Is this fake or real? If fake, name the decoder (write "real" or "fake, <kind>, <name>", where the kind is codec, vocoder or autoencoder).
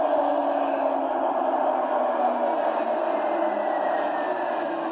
real